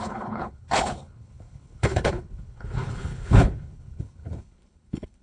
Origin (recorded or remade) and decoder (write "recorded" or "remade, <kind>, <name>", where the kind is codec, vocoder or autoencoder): remade, codec, HILCodec